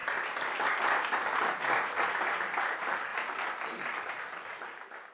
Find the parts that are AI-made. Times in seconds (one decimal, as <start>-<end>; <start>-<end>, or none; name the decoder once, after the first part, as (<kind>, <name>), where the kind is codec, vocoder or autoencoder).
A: 0.8-5.1 (vocoder, BigVGAN v2)